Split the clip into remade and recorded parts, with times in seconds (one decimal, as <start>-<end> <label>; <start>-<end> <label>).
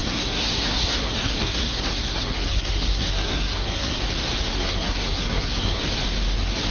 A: 0.0-4.0 remade; 4.0-4.5 recorded; 4.5-5.8 remade; 5.8-6.7 recorded